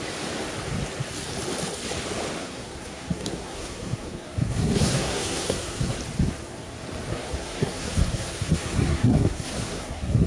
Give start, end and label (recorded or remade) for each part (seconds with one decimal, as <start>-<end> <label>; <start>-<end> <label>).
0.0-2.4 recorded; 2.4-6.0 remade; 6.0-7.1 recorded; 7.1-10.3 remade